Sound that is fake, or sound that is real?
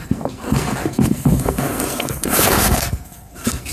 fake